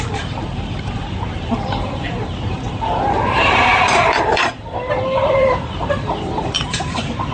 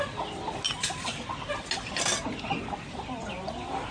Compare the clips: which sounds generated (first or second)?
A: first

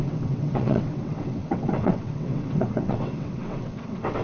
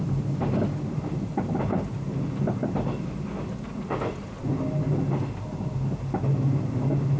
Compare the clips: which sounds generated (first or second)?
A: first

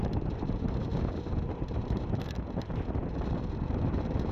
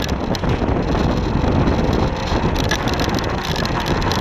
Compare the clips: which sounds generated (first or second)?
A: first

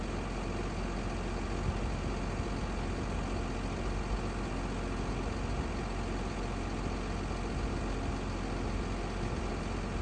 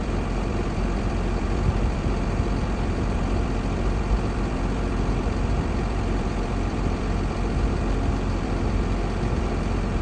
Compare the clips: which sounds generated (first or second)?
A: second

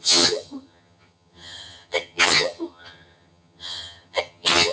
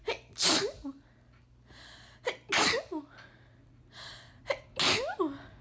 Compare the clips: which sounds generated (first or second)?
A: first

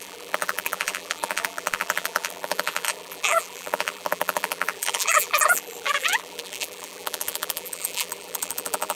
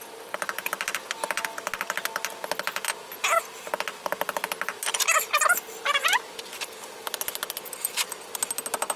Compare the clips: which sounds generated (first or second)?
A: first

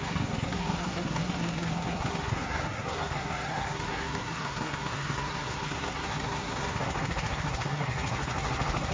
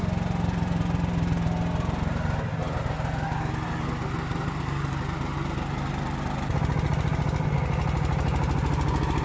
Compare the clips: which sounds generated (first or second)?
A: first